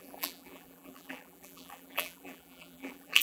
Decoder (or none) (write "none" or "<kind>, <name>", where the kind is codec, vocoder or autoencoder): vocoder, BigVGAN v2